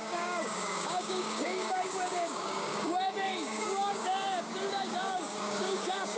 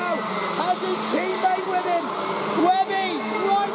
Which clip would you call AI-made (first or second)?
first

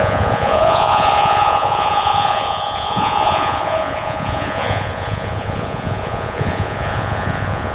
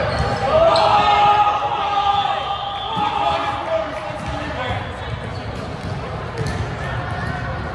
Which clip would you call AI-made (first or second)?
first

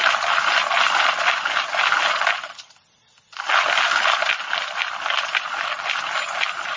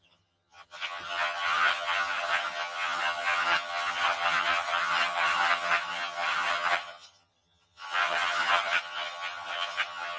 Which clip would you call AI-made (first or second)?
second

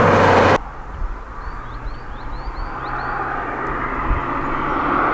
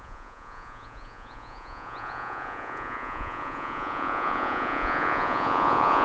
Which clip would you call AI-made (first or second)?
second